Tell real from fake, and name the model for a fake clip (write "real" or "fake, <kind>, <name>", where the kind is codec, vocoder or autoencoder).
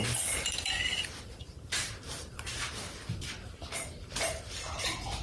fake, vocoder, BigVGAN v2